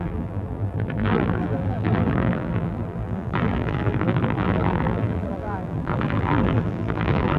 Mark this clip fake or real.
fake